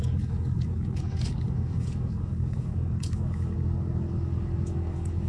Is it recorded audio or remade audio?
remade